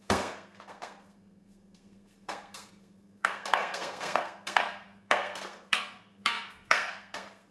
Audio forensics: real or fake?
fake